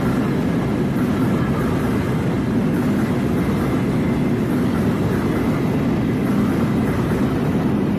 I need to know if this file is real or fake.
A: real